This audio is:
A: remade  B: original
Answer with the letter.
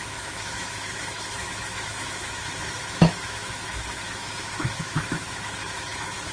A